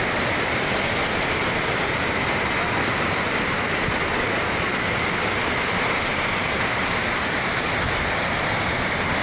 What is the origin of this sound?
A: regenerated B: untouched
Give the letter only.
B